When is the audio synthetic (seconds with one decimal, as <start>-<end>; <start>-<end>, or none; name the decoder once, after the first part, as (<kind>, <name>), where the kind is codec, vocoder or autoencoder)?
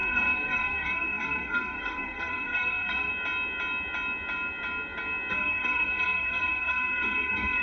0.0-3.1 (codec, SNAC); 5.3-7.6